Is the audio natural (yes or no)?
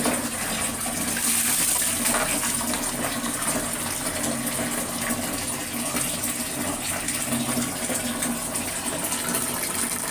yes